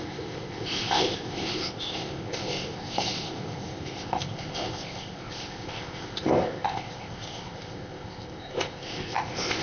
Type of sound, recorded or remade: remade